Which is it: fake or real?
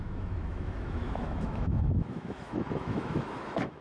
fake